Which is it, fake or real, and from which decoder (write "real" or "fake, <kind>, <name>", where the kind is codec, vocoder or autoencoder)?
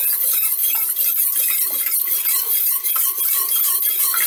real